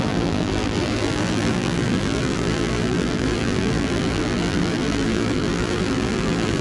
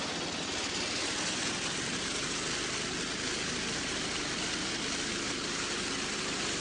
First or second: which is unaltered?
second